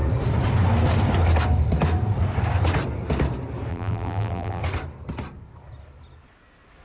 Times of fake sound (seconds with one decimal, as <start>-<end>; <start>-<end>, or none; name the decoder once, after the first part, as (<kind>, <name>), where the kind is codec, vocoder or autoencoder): 3.7-4.6 (vocoder, BigVGAN v2)